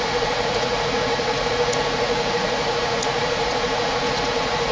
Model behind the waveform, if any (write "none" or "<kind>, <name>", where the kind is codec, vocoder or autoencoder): vocoder, Vocos